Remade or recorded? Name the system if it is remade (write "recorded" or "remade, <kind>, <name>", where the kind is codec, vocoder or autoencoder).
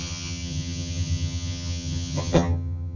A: remade, vocoder, HiFi-GAN